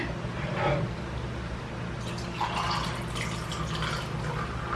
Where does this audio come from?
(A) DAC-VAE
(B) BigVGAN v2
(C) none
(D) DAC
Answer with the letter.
C